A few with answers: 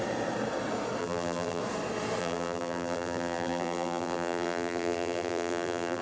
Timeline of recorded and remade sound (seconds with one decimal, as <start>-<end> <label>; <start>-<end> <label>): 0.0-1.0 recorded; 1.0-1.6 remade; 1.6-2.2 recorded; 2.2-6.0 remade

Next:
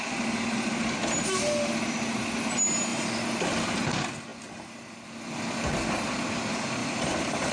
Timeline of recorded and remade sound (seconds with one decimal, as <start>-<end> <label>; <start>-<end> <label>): 0.0-2.9 recorded; 2.9-3.7 remade; 3.7-4.3 recorded; 4.3-5.0 remade; 5.0-6.8 recorded; 6.8-7.5 remade

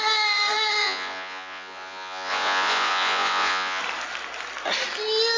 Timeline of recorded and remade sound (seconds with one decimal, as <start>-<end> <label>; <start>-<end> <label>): 0.0-0.8 recorded; 0.8-3.8 remade; 3.8-5.4 recorded

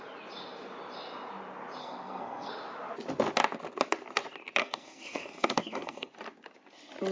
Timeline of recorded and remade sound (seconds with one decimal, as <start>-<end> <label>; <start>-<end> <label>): 0.0-1.8 recorded; 1.8-2.5 remade; 2.5-4.6 recorded; 4.6-6.1 remade; 6.1-7.1 recorded